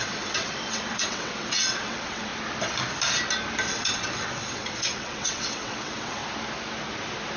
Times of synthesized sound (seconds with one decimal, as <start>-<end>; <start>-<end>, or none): 0.0-2.3; 3.7-6.2